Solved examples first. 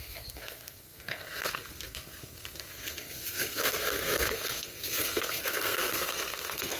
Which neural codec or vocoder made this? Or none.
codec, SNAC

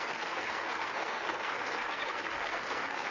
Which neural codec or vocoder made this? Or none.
codec, SNAC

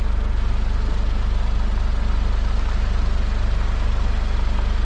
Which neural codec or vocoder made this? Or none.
none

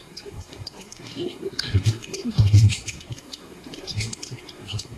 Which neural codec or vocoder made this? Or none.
codec, SNAC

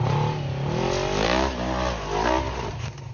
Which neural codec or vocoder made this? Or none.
none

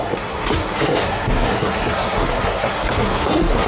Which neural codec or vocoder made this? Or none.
codec, SNAC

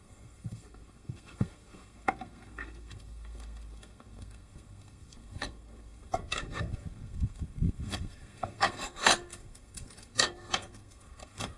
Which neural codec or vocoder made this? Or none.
codec, SNAC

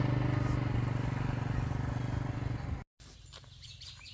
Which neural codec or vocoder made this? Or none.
none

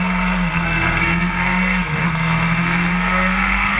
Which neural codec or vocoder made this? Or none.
codec, SNAC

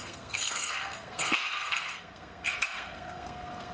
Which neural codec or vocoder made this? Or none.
codec, SNAC